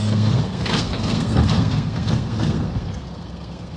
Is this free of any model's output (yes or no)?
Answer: no